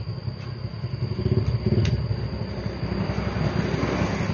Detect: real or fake real